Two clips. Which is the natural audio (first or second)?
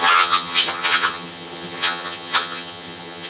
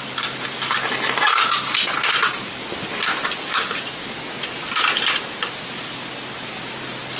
second